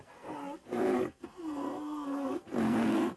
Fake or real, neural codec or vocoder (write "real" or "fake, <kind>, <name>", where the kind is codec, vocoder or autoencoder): fake, codec, SNAC